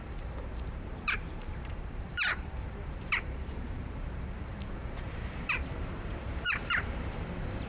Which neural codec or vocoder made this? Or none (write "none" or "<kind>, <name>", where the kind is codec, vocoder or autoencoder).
vocoder, BigVGAN v2